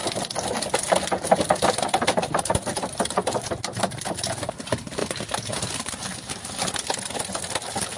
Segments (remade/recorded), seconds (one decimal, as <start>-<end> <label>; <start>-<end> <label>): 0.0-5.0 remade; 5.0-5.7 recorded; 5.7-8.0 remade